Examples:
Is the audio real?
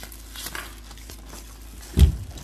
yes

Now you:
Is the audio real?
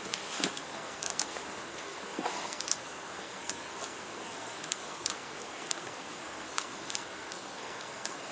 no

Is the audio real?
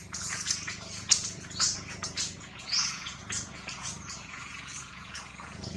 no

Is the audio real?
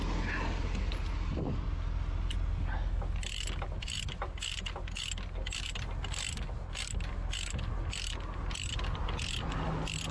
yes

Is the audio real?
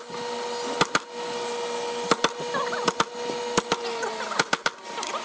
yes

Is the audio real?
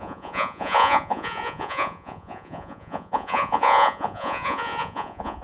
no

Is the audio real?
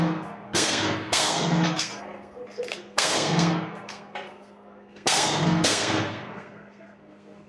no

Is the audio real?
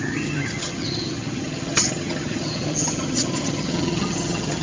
no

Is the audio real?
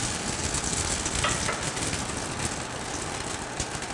yes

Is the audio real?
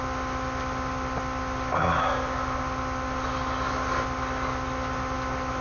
yes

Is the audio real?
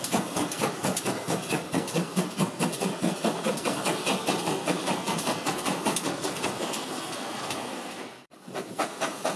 no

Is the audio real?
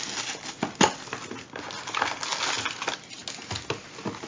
yes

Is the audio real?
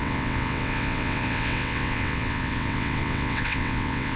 no